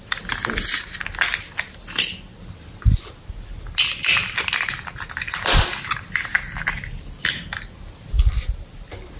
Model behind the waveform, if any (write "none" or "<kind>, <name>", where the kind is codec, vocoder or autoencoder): none